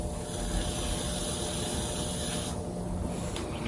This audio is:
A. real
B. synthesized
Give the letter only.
A